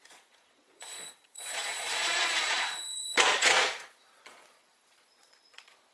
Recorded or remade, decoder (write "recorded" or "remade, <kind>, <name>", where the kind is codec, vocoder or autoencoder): remade, vocoder, Vocos